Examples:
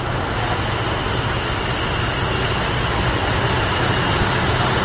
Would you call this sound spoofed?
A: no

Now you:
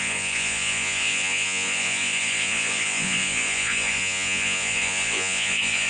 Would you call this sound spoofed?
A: yes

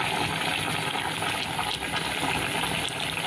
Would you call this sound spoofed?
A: no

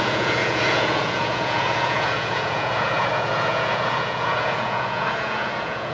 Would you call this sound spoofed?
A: yes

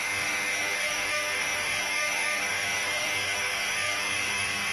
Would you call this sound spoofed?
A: yes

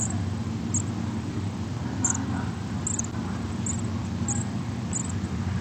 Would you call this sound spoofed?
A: no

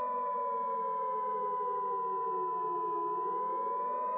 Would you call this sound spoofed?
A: no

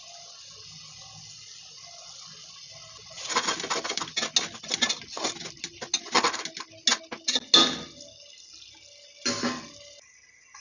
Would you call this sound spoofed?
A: no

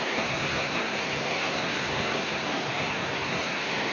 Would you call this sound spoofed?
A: yes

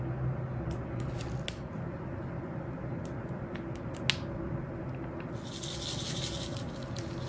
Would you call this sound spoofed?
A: no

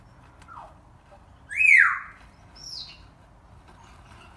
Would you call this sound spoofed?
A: no